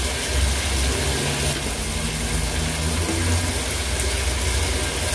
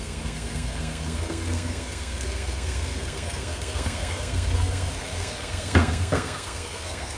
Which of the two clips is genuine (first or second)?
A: first